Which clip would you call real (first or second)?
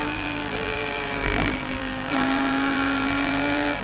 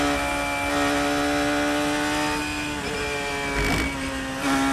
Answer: second